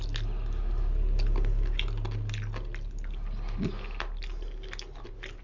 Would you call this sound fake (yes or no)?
no